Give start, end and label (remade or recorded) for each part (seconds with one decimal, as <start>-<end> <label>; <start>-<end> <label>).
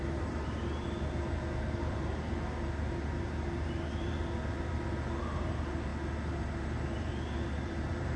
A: 0.0-5.9 remade; 5.9-6.4 recorded; 6.4-8.2 remade